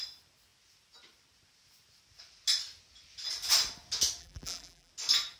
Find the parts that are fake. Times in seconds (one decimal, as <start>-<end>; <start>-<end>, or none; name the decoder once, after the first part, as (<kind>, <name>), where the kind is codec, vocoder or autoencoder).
4.2-4.9 (vocoder, BigVGAN v2)